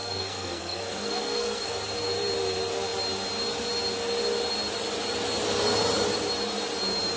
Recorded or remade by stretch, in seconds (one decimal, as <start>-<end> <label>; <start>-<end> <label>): 0.0-1.7 remade; 1.7-7.2 recorded